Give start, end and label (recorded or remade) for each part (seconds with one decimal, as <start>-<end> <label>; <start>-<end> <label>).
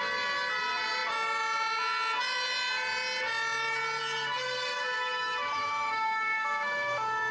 0.0-4.7 recorded; 4.7-7.3 remade